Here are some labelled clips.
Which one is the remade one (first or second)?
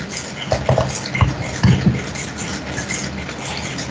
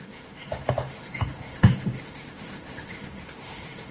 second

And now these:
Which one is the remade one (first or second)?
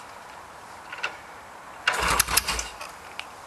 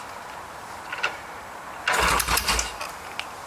first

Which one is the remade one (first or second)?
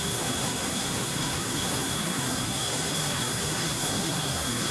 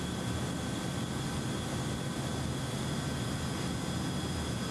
first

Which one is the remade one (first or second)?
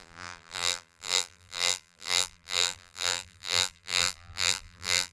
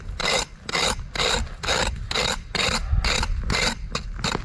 first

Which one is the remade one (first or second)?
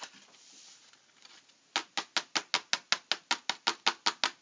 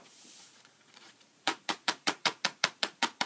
second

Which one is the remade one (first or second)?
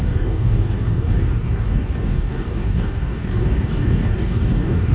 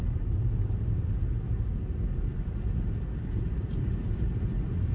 first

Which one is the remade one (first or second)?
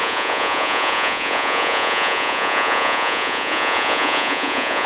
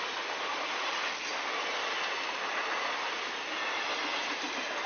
first